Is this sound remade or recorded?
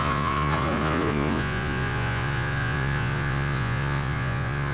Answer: remade